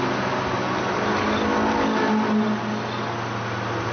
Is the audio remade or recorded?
recorded